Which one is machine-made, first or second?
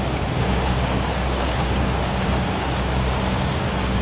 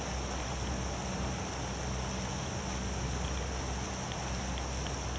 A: first